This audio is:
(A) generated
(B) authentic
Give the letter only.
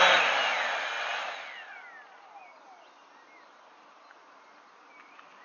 B